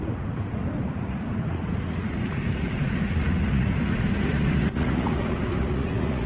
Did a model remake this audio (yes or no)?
yes